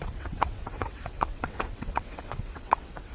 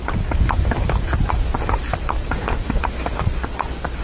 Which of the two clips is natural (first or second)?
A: second